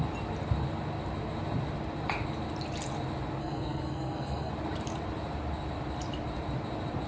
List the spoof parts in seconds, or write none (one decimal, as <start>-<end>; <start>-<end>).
3.4-4.5